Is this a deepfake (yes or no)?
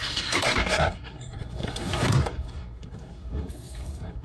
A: yes